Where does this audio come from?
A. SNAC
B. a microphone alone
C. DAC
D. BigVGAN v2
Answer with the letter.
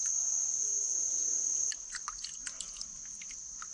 D